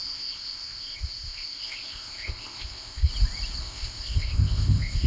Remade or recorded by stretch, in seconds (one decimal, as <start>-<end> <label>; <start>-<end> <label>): 0.0-3.1 remade; 3.1-3.6 recorded; 3.6-5.1 remade